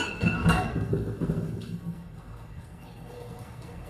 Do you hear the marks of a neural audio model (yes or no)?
yes